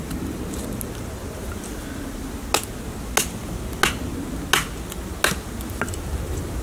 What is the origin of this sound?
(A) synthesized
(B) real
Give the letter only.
B